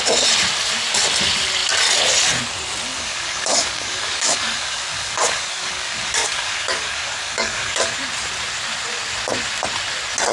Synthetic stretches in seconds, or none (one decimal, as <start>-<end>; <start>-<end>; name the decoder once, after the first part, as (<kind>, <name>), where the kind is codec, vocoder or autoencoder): 2.9-7.9 (codec, DAC)